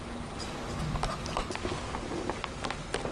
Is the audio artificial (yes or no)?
no